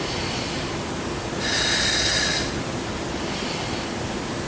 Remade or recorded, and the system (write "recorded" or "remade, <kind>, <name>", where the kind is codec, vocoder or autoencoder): recorded